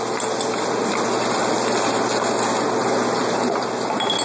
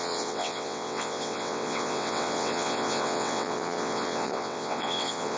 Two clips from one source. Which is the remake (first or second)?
second